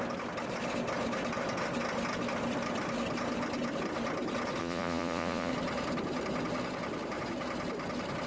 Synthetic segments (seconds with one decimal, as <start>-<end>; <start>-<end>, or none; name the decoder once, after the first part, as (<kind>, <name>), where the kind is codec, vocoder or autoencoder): 4.6-5.5 (vocoder, Vocos)

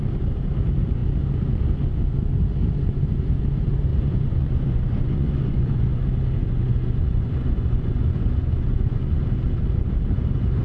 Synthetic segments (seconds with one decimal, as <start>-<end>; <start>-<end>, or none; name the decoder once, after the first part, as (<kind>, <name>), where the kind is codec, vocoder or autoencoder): 3.9-6.0 (vocoder, Vocos); 6.4-9.2

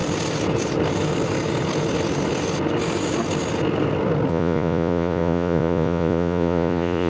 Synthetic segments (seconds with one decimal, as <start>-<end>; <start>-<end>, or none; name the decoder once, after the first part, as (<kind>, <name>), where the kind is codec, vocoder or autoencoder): 4.3-7.1 (vocoder, Vocos)

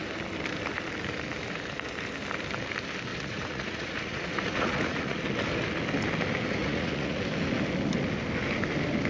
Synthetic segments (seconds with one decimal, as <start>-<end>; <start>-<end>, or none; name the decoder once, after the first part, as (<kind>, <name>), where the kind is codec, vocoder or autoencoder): 3.1-5.2 (vocoder, Vocos); 6.6-7.2

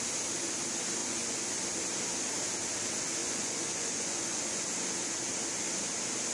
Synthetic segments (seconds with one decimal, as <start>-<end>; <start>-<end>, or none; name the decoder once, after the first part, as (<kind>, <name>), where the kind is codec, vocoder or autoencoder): 1.0-1.6 (vocoder, Vocos); 3.2-4.6

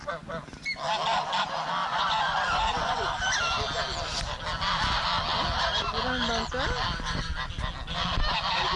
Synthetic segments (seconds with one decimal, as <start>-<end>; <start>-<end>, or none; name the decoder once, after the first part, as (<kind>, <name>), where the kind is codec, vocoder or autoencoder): 1.9-3.1 (vocoder, Vocos)